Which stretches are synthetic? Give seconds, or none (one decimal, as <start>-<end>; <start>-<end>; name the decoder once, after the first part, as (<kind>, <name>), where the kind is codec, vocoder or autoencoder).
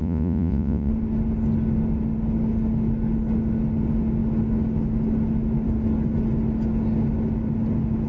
0.0-0.9 (vocoder, Vocos)